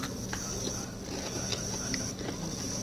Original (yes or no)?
yes